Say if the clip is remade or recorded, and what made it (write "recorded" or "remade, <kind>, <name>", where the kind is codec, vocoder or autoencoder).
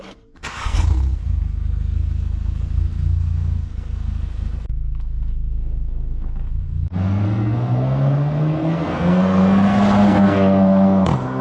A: remade, codec, SNAC